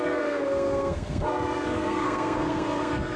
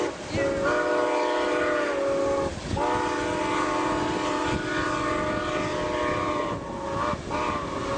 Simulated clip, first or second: first